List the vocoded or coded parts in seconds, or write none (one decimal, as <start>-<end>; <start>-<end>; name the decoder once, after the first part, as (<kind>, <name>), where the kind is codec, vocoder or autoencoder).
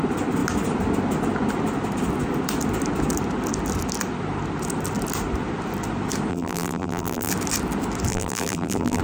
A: 6.3-7.3 (vocoder, BigVGAN v2); 8.1-9.0